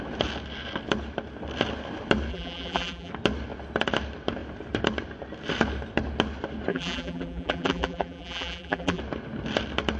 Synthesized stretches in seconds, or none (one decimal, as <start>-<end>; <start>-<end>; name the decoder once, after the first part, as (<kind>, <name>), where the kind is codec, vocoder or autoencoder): 2.3-3.1 (vocoder, BigVGAN v2); 6.7-9.0